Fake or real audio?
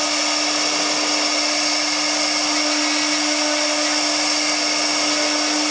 real